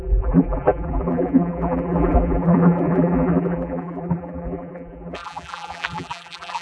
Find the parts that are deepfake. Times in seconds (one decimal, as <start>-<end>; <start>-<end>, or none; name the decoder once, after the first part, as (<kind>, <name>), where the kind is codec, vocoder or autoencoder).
0.0-6.6 (vocoder, BigVGAN v2)